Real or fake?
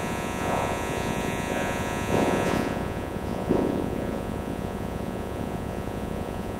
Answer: fake